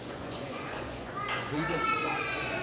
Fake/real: fake